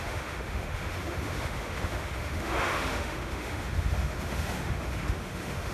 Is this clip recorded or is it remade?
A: remade